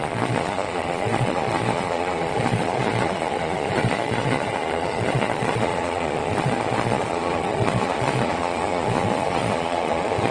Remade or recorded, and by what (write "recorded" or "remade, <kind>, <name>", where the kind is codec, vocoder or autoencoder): remade, vocoder, Vocos